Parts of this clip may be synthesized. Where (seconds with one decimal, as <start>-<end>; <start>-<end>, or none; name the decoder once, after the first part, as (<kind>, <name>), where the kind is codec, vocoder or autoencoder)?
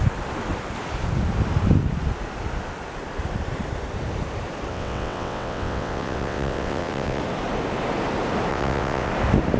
4.7-7.2 (vocoder, WaveNeXt); 8.5-9.1